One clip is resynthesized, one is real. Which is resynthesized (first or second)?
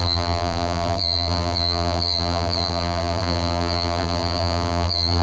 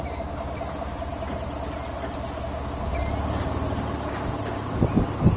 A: first